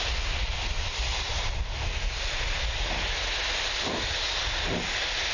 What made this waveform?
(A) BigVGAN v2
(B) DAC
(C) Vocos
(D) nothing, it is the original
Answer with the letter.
D